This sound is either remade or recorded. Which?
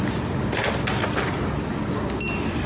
recorded